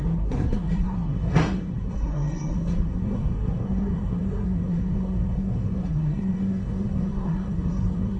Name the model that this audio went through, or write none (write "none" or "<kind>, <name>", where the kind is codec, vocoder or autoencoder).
codec, SNAC